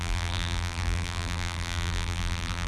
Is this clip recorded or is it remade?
remade